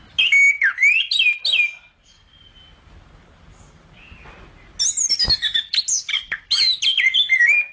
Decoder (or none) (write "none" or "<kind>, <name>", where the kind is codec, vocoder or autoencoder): none